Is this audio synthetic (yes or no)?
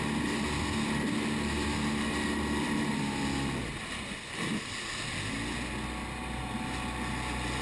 no